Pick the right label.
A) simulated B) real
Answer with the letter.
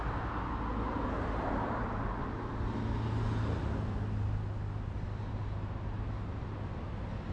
B